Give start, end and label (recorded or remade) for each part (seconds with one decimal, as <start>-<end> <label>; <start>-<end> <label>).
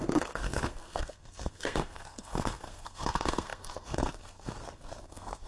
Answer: 0.0-5.5 remade